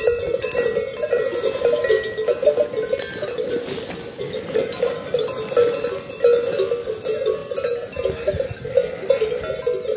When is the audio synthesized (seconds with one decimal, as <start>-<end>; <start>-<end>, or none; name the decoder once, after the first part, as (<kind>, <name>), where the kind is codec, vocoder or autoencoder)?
none